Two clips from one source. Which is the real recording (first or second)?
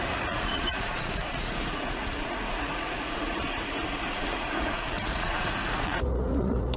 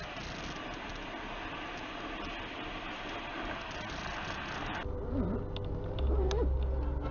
second